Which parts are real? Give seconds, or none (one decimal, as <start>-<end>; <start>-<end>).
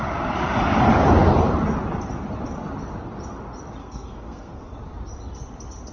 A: 0.0-3.8; 4.6-5.9